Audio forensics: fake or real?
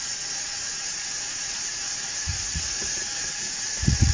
fake